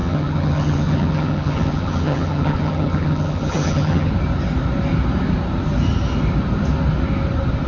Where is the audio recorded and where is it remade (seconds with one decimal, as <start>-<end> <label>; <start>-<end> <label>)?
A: 0.0-4.1 remade; 4.1-7.7 recorded